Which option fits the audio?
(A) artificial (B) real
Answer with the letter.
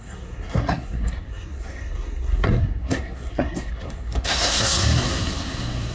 A